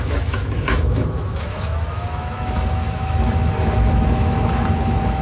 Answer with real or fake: fake